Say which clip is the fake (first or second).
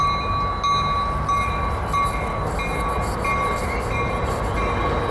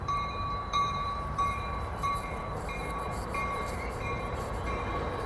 second